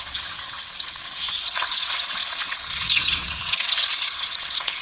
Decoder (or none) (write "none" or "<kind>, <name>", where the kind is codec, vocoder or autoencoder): vocoder, WaveNeXt